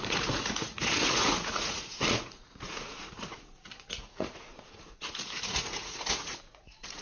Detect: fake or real fake